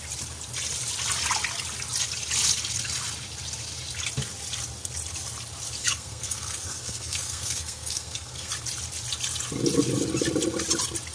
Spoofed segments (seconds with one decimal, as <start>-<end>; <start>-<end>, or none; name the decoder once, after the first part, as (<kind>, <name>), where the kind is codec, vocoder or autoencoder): 5.8-8.5 (codec, SNAC)